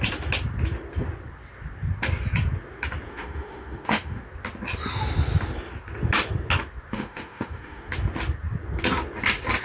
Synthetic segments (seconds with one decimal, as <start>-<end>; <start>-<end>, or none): 3.1-4.2; 6.9-7.9